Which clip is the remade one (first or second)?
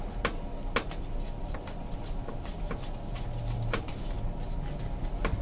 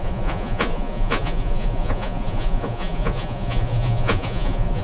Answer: second